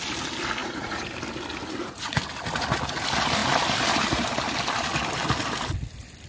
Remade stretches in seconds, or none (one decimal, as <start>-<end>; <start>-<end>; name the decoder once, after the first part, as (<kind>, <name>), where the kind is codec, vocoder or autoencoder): 0.6-1.1 (vocoder, Vocos); 1.6-2.2